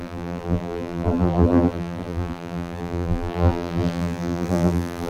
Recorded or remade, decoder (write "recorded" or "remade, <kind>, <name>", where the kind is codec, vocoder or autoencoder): remade, vocoder, BigVGAN v2